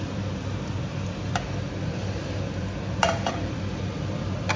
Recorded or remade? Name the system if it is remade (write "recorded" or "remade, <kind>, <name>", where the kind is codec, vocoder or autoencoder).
remade, vocoder, BigVGAN v2